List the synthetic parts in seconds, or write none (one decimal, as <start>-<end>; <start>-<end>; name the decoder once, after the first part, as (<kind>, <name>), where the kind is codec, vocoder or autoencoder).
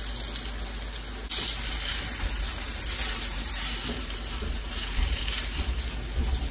1.9-5.8 (vocoder, BigVGAN v2)